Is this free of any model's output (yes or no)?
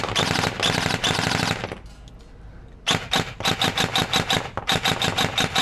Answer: yes